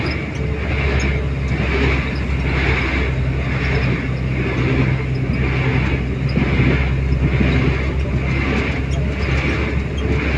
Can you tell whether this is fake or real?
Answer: real